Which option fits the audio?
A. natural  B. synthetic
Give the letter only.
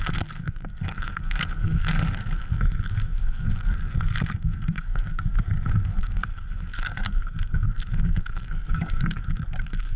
B